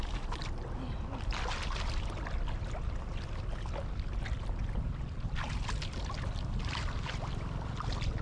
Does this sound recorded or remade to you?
recorded